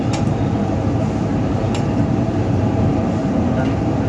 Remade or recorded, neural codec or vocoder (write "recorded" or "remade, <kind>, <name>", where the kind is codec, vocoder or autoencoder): remade, vocoder, BigVGAN v2